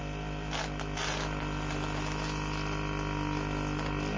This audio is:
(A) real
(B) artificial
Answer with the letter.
A